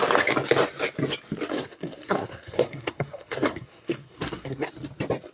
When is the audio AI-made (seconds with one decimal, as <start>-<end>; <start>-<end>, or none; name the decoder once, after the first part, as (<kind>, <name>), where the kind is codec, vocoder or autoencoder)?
1.5-4.7 (codec, SNAC)